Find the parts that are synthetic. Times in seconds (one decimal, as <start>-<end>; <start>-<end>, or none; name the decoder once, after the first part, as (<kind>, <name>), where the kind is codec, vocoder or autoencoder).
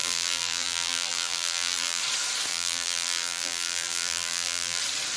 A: 0.0-2.0 (vocoder, BigVGAN v2); 2.5-4.8